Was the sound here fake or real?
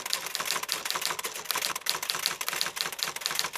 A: fake